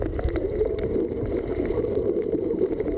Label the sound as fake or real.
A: real